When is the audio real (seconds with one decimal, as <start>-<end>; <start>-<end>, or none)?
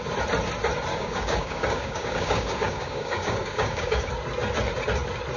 0.0-0.9; 4.1-5.4